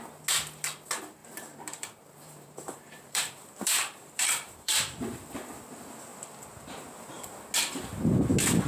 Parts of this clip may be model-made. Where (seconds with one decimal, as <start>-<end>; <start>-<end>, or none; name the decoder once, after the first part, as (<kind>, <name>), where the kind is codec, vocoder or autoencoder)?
1.2-5.3 (vocoder, BigVGAN v2)